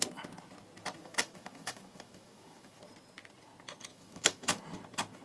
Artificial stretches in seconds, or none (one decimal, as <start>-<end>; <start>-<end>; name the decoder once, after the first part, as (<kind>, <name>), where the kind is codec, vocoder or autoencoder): 1.0-2.8 (autoencoder, DAC-VAE); 3.9-4.6